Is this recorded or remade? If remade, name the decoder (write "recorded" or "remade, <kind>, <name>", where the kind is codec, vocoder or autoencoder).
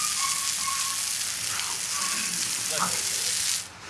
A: recorded